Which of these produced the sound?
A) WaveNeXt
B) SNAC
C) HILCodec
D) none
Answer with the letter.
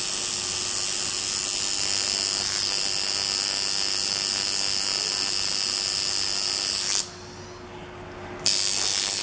D